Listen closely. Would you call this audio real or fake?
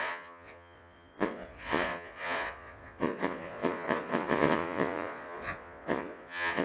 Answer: fake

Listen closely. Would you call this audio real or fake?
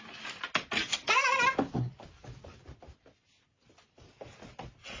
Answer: real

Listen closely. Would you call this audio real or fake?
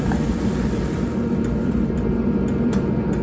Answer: fake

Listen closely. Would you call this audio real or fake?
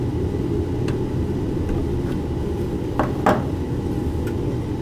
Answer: real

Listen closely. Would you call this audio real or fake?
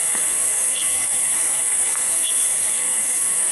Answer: fake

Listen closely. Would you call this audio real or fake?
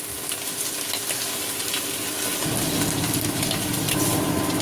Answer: real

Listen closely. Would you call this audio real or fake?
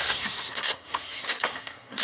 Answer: fake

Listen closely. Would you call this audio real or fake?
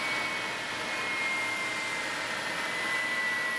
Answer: real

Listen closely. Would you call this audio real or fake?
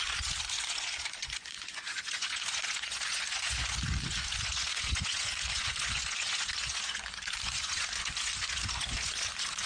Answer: fake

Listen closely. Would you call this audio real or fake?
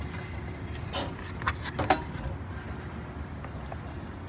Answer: real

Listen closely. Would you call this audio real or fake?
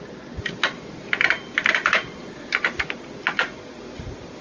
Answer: real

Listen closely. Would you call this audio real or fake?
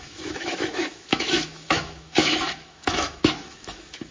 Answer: fake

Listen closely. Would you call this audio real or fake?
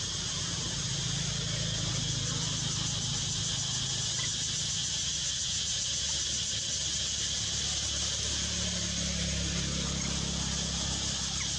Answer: real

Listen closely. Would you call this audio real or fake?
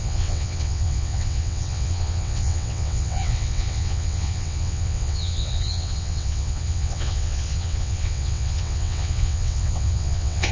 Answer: fake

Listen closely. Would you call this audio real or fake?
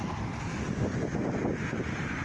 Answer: real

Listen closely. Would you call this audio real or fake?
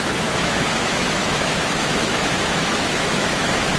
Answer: fake